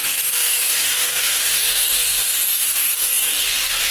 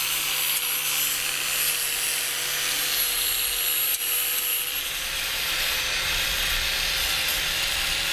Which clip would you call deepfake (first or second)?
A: first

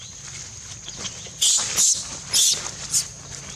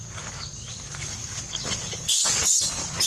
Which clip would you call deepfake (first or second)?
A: second